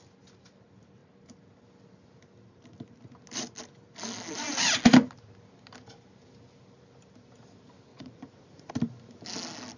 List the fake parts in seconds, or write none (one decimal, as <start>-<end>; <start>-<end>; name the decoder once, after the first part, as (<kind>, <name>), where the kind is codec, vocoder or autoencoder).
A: 7.9-8.7 (vocoder, Vocos)